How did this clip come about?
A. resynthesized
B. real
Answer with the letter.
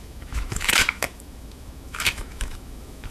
A